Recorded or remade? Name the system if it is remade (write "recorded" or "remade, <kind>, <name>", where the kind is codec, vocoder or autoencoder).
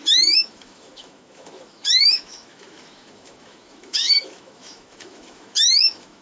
remade, autoencoder, DAC-VAE